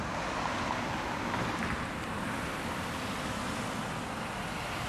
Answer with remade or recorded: recorded